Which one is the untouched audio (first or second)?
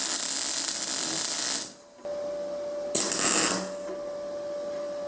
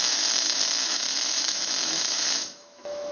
first